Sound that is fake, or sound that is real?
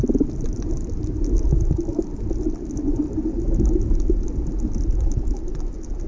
real